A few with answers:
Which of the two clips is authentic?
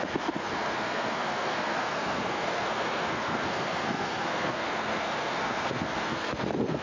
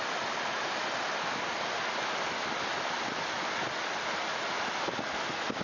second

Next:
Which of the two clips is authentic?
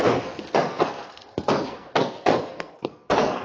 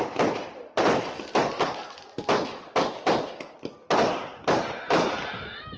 second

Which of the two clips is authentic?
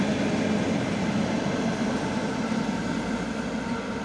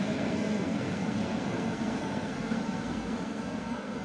first